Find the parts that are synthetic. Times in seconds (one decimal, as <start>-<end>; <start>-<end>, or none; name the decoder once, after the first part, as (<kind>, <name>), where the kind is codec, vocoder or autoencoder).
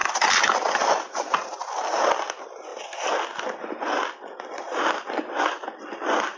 0.0-0.9 (vocoder, BigVGAN v2); 2.7-6.4